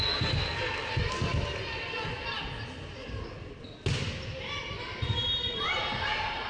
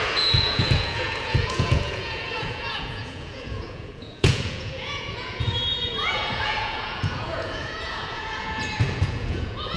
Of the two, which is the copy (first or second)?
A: second